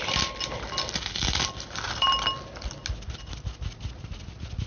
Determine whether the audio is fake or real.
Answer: real